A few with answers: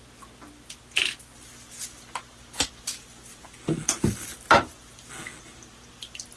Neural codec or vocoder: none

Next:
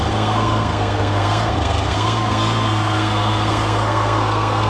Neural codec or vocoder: codec, SNAC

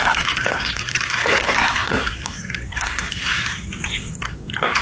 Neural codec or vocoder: codec, SNAC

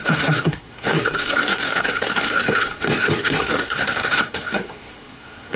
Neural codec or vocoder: codec, SNAC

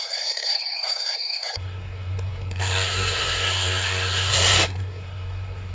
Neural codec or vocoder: codec, SNAC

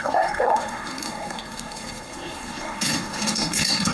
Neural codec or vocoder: codec, SNAC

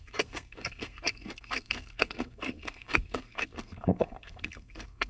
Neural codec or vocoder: codec, SNAC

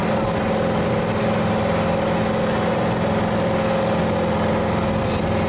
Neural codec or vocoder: none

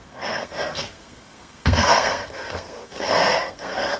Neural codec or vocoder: codec, SNAC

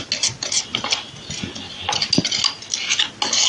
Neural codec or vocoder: none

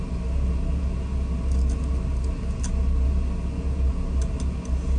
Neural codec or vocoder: none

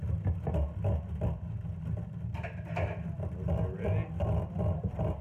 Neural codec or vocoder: none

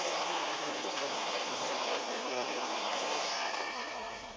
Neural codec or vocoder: codec, SNAC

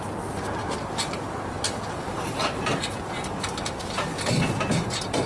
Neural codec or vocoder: none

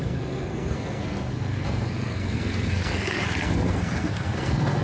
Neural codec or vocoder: codec, SNAC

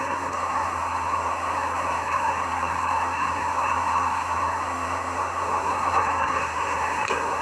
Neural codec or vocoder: codec, SNAC